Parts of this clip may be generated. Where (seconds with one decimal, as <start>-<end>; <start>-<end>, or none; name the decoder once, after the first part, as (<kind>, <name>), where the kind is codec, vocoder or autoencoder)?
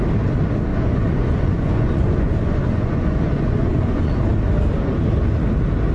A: 0.7-4.2 (vocoder, Vocos)